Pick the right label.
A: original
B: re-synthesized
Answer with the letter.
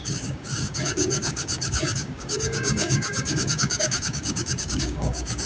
B